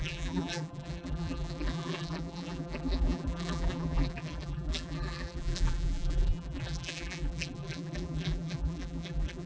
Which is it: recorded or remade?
remade